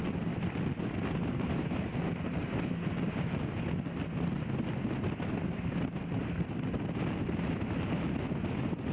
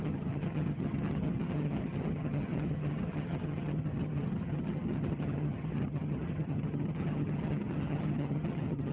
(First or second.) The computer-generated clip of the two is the second